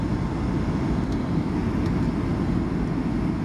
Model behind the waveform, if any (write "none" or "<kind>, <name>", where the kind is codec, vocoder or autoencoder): none